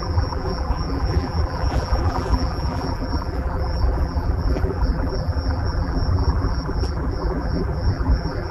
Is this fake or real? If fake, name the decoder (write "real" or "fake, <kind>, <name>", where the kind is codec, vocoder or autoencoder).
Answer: fake, vocoder, BigVGAN v2